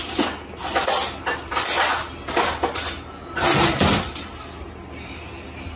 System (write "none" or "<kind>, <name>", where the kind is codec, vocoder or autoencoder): none